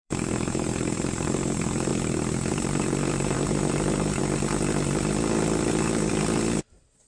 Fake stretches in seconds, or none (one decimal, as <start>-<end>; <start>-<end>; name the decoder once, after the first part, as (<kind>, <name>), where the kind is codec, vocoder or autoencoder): 0.0-1.9 (vocoder, BigVGAN v2); 2.5-4.2